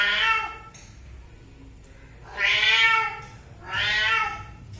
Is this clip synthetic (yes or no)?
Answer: no